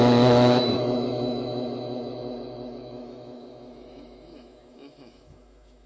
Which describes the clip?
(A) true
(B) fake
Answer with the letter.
B